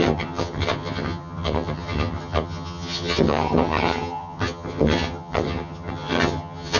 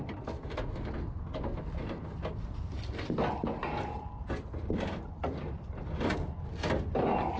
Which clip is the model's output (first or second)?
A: first